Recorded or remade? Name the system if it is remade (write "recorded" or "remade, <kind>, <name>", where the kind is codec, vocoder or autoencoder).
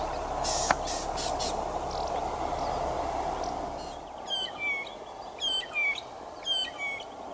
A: recorded